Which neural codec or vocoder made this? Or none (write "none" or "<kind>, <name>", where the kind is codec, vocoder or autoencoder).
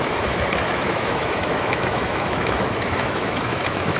autoencoder, DAC-VAE